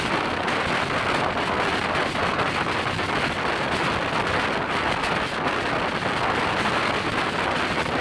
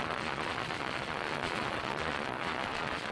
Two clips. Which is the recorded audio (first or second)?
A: first